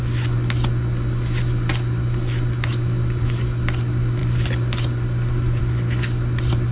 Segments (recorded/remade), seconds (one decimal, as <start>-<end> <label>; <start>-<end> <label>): 0.0-6.7 recorded